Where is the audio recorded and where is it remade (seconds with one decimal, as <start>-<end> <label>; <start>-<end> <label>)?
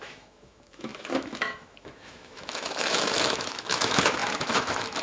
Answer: 0.0-5.0 remade